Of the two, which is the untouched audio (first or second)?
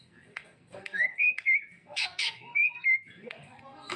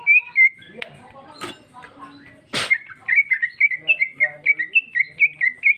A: second